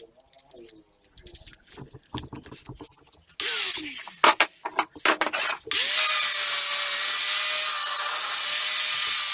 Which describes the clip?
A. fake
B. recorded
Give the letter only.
B